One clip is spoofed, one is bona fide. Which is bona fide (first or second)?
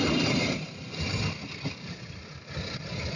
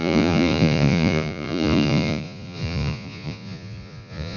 first